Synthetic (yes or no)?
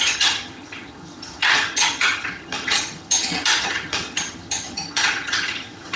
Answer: yes